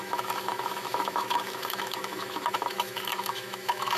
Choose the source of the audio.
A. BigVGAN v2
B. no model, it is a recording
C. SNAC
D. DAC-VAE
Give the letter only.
D